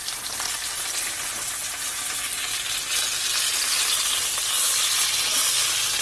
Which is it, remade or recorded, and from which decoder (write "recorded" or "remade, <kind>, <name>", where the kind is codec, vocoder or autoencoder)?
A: recorded